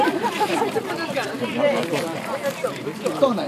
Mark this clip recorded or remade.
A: remade